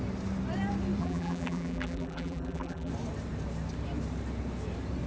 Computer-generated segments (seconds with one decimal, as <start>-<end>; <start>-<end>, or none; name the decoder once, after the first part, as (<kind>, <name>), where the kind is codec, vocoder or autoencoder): 1.0-2.9 (vocoder, BigVGAN v2)

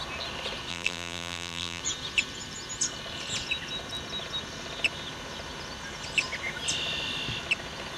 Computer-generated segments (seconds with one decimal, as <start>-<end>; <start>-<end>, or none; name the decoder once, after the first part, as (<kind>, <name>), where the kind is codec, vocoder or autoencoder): 0.7-1.8 (vocoder, BigVGAN v2)

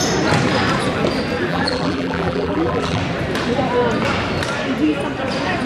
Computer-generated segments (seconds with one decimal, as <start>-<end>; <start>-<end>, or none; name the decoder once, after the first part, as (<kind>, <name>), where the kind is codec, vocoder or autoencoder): 1.5-3.0 (vocoder, BigVGAN v2)

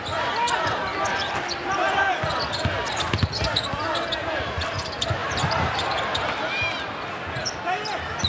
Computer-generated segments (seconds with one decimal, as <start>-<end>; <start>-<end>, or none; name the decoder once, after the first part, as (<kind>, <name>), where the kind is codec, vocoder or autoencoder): 5.2-5.7 (vocoder, BigVGAN v2)

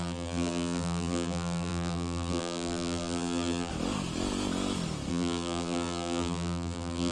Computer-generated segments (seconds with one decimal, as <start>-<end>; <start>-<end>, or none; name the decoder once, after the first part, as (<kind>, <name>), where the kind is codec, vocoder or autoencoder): 0.0-3.7 (vocoder, BigVGAN v2); 5.1-7.1